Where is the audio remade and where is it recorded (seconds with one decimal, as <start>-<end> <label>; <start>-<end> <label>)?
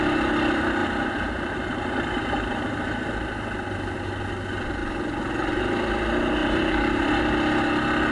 0.0-0.8 recorded; 0.8-3.5 remade; 3.5-6.4 recorded; 6.4-7.1 remade; 7.1-8.1 recorded